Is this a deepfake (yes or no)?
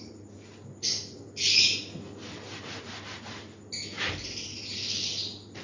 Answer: no